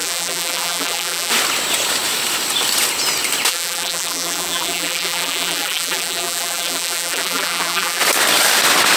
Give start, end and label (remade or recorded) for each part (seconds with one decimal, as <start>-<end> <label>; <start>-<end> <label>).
0.0-1.3 remade; 1.3-3.5 recorded; 3.5-8.0 remade; 8.0-9.0 recorded

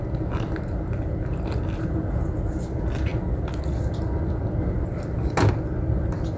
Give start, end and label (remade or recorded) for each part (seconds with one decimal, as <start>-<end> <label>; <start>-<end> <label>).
0.0-6.4 recorded

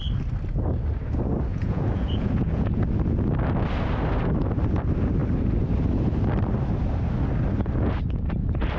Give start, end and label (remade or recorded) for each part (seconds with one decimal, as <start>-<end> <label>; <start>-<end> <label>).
0.0-1.5 recorded; 1.5-2.8 remade; 2.8-8.8 recorded

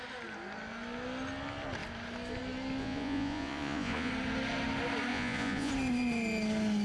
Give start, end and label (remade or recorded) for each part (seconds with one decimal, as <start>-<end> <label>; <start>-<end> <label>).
0.0-2.8 recorded; 2.8-4.1 remade; 4.1-5.1 recorded; 5.1-5.7 remade; 5.7-6.8 recorded

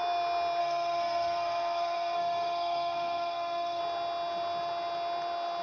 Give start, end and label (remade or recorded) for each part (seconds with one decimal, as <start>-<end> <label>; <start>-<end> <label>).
0.0-0.6 recorded; 0.6-3.8 remade; 3.8-5.6 recorded